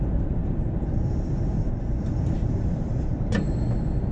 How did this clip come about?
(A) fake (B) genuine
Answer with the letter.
A